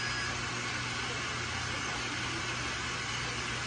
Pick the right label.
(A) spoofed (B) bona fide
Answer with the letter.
B